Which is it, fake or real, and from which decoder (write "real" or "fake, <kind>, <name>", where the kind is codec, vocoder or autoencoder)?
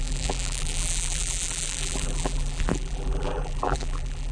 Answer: fake, vocoder, BigVGAN v2